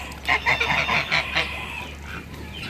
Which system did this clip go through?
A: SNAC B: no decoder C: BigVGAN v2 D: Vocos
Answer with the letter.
B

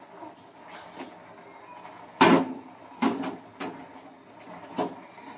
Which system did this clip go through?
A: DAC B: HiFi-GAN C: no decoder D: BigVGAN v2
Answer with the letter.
C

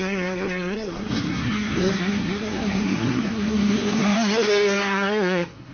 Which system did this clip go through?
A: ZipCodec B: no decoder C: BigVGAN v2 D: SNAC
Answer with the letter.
D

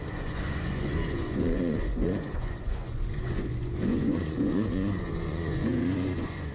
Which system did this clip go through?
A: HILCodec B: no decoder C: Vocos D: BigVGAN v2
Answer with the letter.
C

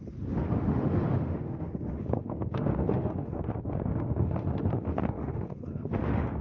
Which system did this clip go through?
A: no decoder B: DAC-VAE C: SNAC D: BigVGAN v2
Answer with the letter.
B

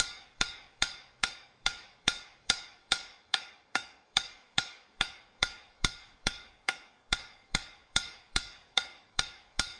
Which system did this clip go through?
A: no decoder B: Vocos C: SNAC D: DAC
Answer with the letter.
D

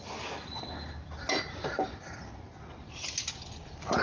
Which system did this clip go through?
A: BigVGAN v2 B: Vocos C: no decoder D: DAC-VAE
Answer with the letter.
C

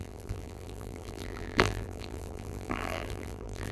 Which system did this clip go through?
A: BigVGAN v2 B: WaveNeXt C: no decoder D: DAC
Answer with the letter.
A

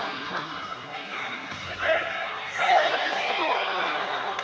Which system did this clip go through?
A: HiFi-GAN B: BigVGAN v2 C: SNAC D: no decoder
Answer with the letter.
C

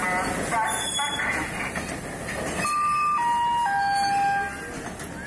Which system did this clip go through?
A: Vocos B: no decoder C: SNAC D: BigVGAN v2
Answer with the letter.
B